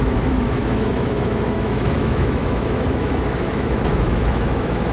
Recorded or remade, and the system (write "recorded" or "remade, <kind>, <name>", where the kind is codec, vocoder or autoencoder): remade, autoencoder, DAC-VAE